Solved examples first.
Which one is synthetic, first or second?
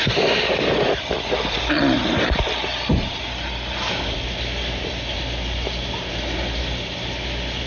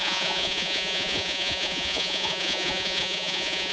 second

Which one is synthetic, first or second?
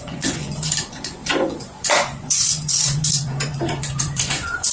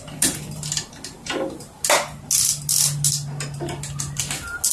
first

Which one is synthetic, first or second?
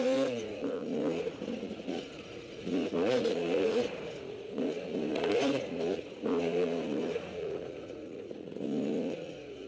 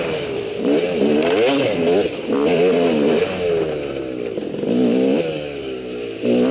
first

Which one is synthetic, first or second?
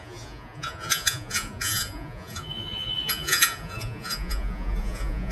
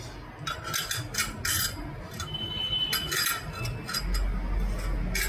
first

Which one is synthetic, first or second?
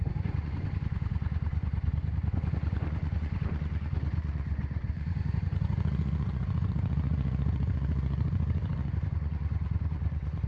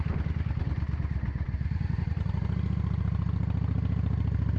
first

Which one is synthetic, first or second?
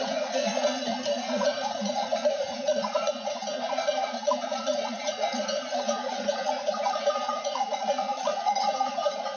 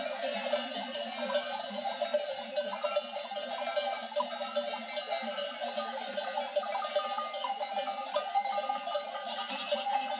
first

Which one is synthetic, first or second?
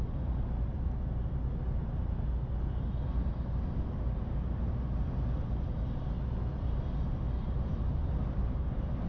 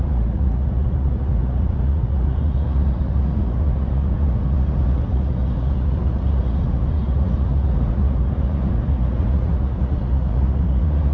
second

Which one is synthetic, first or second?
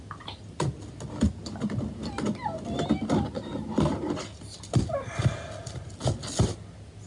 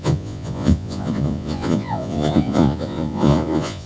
second